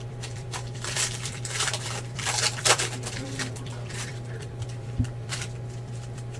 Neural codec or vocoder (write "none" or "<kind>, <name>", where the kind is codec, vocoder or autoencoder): vocoder, BigVGAN v2